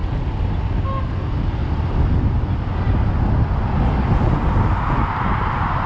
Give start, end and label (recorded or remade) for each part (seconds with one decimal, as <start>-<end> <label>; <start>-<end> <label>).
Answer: 0.0-5.9 recorded